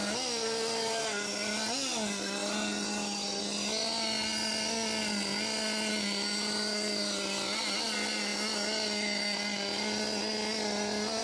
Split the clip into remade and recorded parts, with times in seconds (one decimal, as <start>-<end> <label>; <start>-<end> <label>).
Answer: 0.0-11.2 recorded